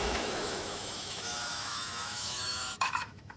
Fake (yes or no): yes